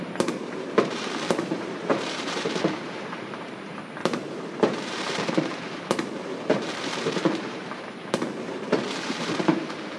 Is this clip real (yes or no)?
no